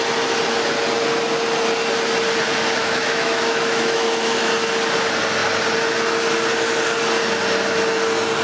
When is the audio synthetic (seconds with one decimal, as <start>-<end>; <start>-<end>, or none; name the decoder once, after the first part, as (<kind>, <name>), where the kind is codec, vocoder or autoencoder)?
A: 2.8-4.5 (autoencoder, DAC-VAE)